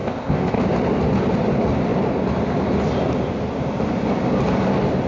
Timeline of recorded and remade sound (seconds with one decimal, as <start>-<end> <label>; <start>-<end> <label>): 0.0-0.6 remade; 0.6-5.1 recorded